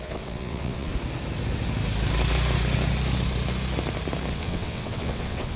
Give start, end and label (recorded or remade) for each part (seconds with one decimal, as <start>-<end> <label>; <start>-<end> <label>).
0.0-0.9 remade; 0.9-4.3 recorded; 4.3-5.6 remade